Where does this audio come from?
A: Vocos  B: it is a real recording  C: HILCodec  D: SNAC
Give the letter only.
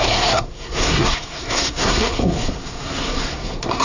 D